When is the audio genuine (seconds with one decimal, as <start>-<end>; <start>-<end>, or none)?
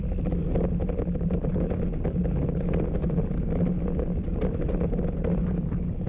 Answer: 0.0-6.1